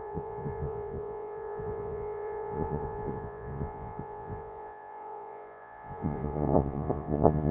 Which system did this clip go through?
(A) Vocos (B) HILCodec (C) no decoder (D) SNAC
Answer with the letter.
A